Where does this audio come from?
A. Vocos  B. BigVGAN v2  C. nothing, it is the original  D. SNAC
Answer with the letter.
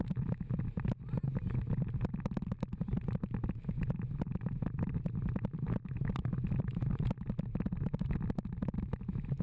C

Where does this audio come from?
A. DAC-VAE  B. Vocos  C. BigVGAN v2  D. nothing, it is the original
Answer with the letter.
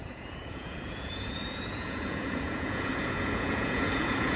B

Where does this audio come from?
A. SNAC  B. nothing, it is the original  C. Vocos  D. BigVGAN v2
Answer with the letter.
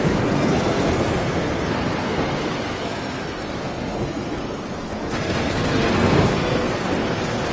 A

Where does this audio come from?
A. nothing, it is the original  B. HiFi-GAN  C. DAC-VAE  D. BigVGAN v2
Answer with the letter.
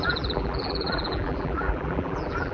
D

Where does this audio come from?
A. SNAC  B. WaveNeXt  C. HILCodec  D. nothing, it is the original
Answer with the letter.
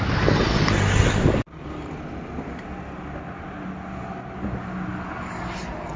D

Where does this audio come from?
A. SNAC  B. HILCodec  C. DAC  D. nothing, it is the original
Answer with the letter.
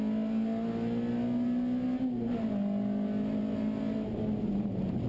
D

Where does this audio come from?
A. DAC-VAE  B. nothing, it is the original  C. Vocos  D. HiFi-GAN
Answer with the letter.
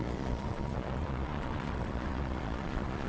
C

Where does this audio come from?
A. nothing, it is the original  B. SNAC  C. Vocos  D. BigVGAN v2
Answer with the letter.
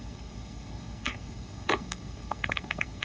B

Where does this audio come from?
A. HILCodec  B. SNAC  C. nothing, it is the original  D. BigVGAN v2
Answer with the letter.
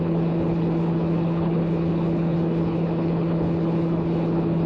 A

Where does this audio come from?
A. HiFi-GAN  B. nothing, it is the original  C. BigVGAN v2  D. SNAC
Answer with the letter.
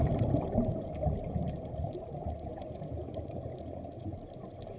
B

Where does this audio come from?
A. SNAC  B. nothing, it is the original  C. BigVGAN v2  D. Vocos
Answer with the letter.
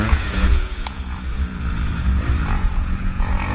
D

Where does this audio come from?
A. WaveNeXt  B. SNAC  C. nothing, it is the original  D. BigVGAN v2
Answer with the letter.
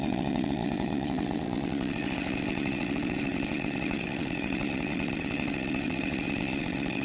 A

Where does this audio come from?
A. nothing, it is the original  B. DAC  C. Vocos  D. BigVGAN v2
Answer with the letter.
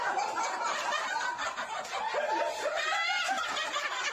A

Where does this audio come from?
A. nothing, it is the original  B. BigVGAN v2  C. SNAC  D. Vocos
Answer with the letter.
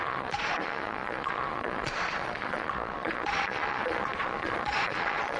D